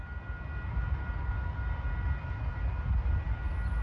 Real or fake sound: real